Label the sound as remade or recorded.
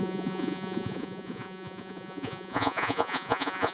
remade